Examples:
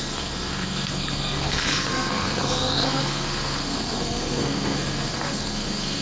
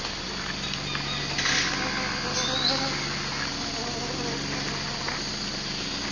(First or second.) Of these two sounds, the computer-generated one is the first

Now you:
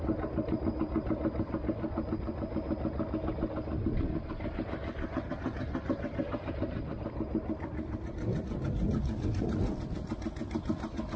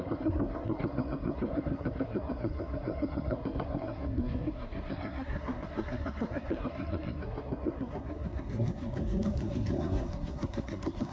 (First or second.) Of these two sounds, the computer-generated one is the second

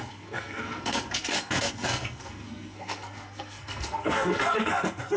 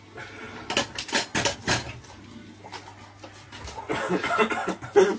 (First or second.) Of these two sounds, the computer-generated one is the first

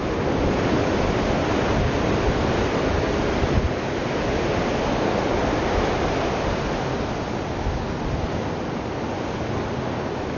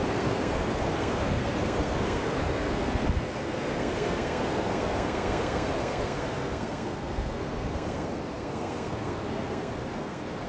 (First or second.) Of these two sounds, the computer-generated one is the second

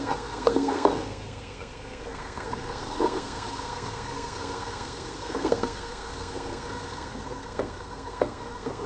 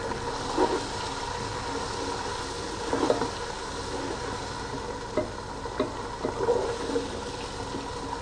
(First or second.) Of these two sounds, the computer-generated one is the first